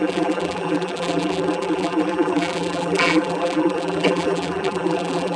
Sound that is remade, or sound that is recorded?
remade